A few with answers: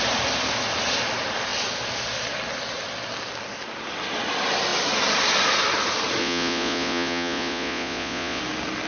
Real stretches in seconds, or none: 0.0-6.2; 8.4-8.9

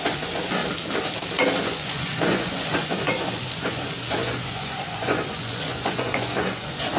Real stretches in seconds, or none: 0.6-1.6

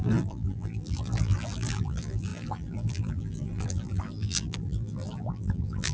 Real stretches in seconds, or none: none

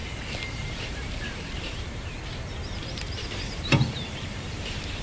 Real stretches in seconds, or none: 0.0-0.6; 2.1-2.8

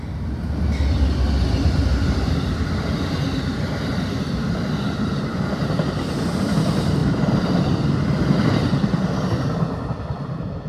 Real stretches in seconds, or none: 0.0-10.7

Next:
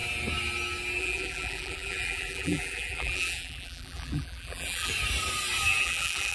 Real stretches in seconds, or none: 0.0-1.0; 4.9-5.8

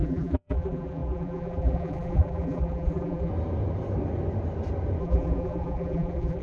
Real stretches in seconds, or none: 3.3-5.0

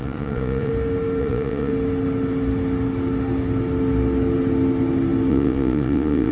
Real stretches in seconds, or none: 0.7-1.2; 1.7-5.3